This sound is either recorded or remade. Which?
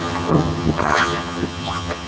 remade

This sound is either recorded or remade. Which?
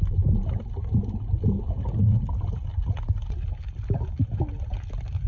recorded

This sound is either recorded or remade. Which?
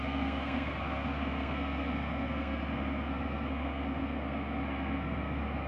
remade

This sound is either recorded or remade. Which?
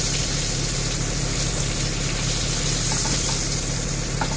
recorded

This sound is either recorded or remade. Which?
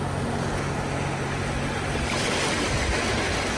recorded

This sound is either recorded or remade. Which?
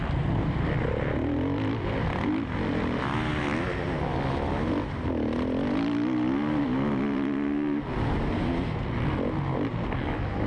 recorded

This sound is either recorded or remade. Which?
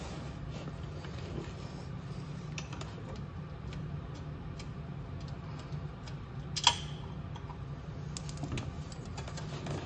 recorded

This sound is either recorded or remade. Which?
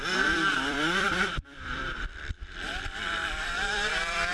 remade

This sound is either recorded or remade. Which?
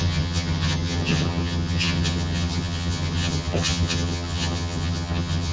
remade